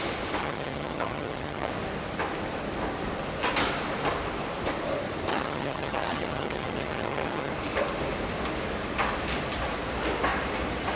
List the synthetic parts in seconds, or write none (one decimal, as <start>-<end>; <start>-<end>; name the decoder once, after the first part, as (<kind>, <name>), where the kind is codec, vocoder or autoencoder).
0.4-1.7 (vocoder, HiFi-GAN); 5.3-7.5